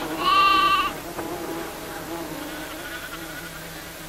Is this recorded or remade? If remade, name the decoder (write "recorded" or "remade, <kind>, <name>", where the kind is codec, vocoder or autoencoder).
recorded